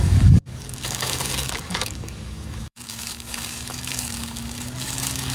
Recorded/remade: remade